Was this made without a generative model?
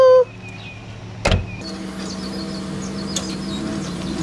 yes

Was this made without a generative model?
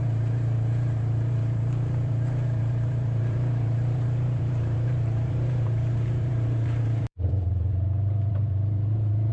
no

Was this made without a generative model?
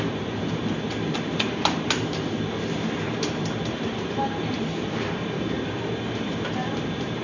no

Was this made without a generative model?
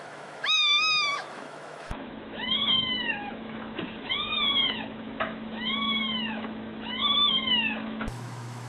no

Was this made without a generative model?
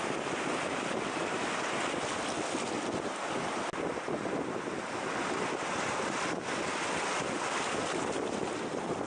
yes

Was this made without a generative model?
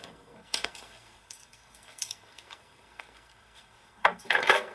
no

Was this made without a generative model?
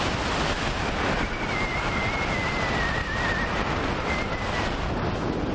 yes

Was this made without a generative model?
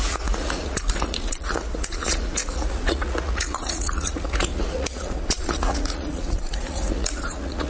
no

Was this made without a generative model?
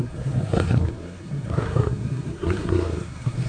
no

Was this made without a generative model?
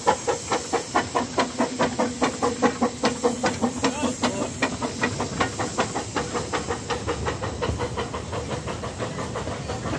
yes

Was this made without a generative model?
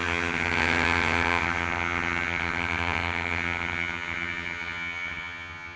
no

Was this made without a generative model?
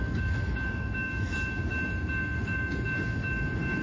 no